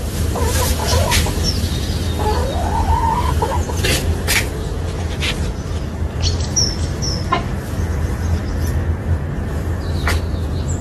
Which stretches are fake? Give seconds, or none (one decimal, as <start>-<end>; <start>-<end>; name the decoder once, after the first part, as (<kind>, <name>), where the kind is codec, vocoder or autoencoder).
none